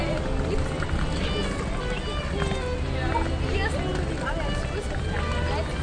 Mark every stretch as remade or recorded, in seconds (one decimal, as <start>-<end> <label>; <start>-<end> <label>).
0.0-5.8 recorded